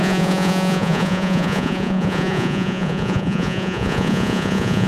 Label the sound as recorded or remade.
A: remade